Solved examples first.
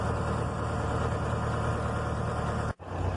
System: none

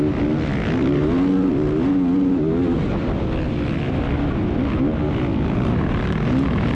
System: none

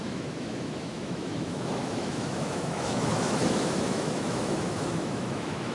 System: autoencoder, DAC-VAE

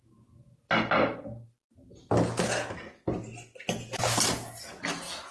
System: none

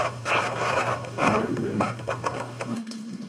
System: codec, SNAC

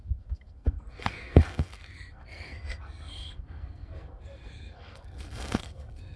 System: codec, SNAC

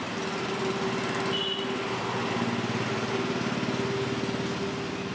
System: none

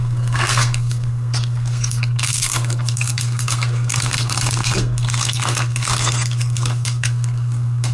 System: codec, SNAC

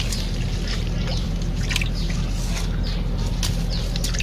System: none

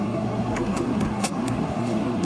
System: codec, SNAC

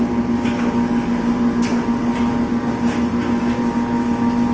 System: none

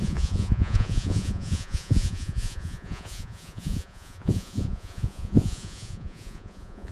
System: vocoder, Vocos